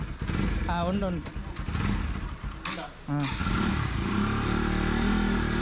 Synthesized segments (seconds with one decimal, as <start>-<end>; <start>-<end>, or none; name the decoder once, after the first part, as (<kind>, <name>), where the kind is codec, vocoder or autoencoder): 3.4-5.6 (vocoder, BigVGAN v2)